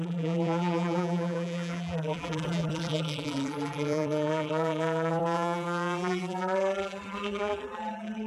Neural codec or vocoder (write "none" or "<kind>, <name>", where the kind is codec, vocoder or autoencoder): vocoder, BigVGAN v2